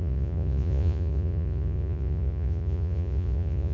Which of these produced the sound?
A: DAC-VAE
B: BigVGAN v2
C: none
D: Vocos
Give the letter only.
D